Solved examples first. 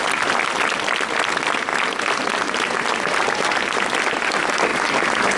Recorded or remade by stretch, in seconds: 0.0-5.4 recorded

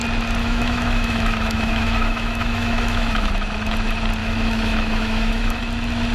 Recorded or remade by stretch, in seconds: 0.0-0.4 recorded; 0.4-3.3 remade; 3.3-4.2 recorded; 4.2-5.6 remade; 5.6-6.1 recorded